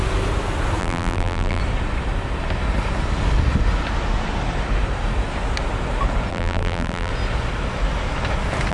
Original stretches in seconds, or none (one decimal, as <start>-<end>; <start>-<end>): 0.0-0.8; 1.6-6.3; 7.1-8.7